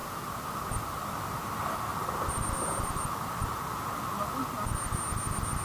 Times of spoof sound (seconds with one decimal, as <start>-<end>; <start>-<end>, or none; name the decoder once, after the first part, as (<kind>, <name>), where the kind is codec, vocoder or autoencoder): none